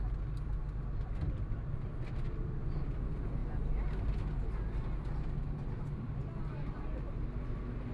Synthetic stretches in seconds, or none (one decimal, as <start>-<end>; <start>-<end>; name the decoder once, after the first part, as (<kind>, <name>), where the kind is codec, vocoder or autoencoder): none